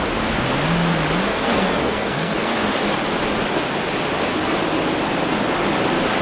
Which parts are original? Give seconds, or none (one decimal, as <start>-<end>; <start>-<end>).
0.0-1.3; 2.7-6.2